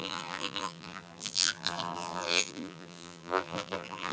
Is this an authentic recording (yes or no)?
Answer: no